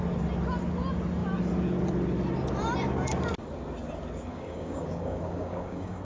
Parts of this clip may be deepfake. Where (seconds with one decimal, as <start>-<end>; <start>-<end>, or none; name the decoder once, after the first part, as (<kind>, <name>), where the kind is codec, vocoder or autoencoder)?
4.3-6.0 (codec, DAC)